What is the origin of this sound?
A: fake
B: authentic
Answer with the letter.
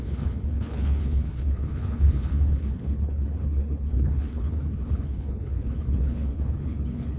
A